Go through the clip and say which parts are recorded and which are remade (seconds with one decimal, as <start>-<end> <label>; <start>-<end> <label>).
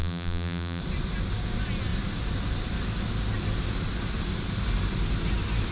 0.0-0.8 remade; 0.8-5.7 recorded